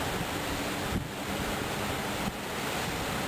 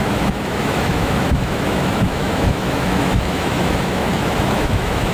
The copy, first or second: second